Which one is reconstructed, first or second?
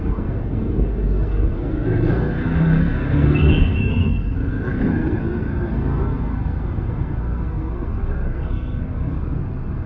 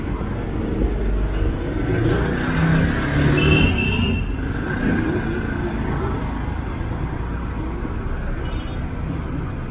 first